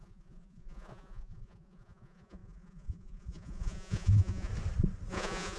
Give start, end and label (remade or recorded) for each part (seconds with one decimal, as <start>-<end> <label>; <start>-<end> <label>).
0.0-4.5 remade; 4.5-5.1 recorded; 5.1-5.6 remade